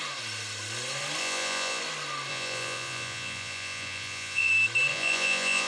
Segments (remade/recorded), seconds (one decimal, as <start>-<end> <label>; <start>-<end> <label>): 0.0-1.2 recorded; 1.2-1.8 remade; 1.8-2.3 recorded; 2.3-4.5 remade; 4.5-4.9 recorded; 4.9-5.7 remade